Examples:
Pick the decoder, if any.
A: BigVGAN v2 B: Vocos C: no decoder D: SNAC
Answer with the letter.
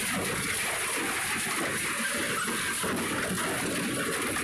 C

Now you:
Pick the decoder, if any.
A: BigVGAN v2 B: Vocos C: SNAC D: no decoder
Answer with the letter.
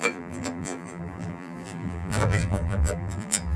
A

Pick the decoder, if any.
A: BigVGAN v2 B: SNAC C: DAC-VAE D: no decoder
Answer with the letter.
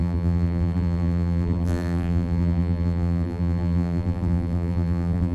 A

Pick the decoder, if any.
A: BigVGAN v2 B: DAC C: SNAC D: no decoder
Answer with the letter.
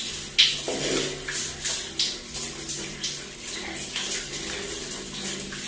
D